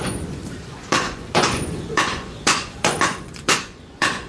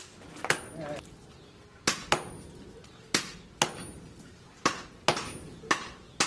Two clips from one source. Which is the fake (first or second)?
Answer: first